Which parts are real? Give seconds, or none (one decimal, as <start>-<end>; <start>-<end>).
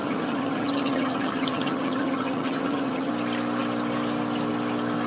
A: 3.1-5.1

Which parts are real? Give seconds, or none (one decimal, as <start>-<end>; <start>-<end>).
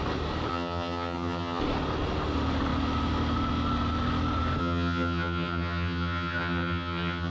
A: 0.0-0.5; 1.6-4.6